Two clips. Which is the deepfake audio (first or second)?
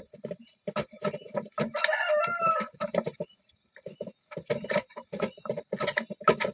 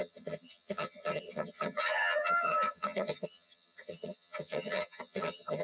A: second